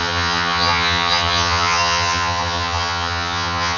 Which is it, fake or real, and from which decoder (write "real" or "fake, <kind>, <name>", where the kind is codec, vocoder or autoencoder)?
fake, vocoder, HiFi-GAN